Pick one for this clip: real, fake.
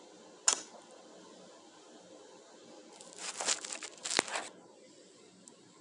real